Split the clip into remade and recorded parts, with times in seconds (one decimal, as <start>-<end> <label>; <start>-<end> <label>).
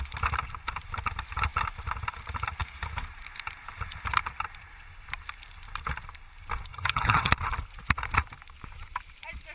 0.0-6.7 recorded; 6.7-7.3 remade; 7.3-9.5 recorded